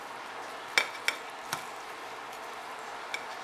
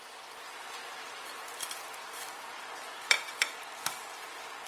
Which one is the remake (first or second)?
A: second